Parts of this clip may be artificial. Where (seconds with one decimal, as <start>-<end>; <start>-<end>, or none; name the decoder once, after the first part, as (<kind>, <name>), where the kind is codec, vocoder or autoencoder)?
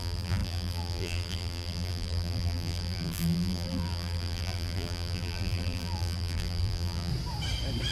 0.0-7.1 (vocoder, BigVGAN v2)